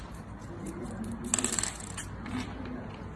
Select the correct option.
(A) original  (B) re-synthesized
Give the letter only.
A